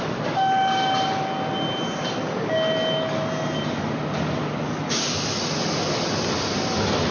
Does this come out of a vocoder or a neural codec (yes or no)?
no